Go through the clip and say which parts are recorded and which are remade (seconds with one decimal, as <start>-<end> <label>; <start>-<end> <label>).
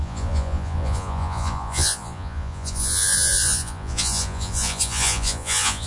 0.0-5.9 remade